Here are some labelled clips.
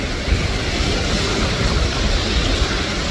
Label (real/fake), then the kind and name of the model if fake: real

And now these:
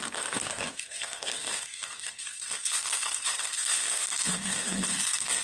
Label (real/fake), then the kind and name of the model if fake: fake, codec, SNAC